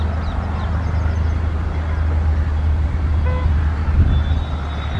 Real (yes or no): yes